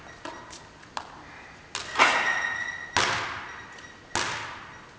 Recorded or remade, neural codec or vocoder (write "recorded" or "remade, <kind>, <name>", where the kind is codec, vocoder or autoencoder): recorded